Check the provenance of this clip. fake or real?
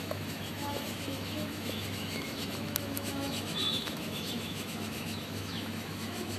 fake